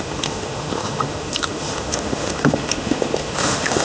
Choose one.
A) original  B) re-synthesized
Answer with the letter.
B